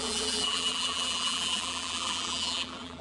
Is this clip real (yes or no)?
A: no